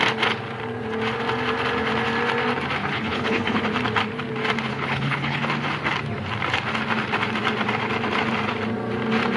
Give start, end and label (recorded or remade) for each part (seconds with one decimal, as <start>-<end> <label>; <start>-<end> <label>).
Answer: 0.0-2.8 recorded; 2.8-3.6 remade; 3.6-4.7 recorded; 4.7-5.4 remade; 5.4-9.4 recorded